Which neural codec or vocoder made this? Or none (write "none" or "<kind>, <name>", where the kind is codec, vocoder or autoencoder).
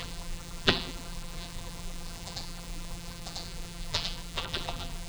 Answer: vocoder, BigVGAN v2